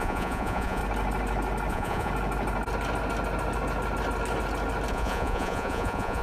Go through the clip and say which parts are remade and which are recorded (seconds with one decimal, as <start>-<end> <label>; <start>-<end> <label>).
0.0-0.8 remade; 0.8-1.7 recorded; 1.7-2.1 remade; 2.1-4.9 recorded; 4.9-6.2 remade